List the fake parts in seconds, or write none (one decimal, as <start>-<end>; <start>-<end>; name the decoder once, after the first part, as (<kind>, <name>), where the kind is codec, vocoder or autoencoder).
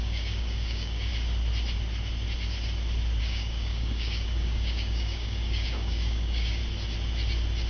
0.0-1.1 (codec, DAC); 3.2-6.6